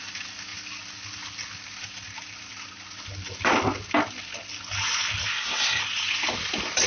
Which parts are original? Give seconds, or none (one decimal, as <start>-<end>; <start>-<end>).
0.0-5.3; 5.8-6.9